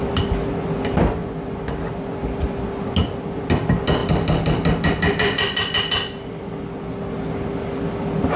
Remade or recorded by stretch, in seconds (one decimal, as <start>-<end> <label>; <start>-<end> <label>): 0.0-8.4 recorded